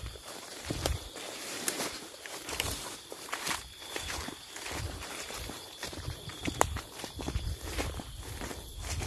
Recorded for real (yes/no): no